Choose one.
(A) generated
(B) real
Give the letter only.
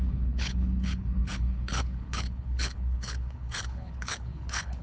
A